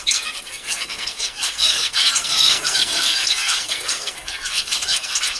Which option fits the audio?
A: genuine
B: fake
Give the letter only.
B